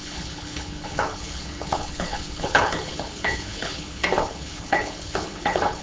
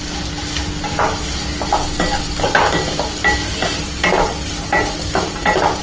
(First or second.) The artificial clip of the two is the first